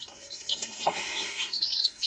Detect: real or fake fake